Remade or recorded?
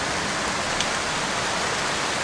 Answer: recorded